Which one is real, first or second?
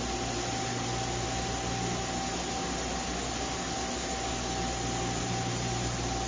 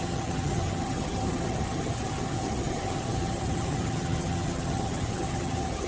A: first